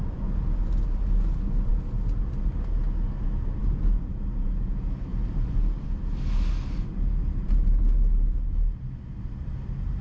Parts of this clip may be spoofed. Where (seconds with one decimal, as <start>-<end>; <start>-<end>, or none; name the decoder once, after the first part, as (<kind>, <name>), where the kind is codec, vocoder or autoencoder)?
none